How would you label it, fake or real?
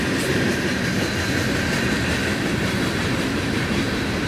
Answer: real